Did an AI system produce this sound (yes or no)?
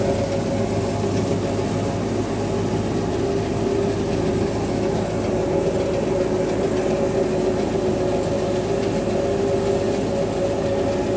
no